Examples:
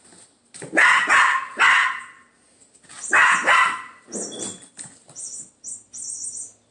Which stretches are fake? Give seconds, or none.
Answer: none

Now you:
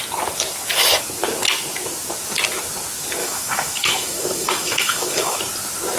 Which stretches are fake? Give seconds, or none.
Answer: 3.2-5.4